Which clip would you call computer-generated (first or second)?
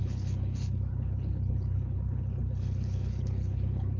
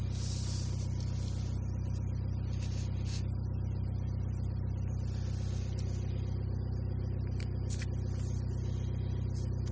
first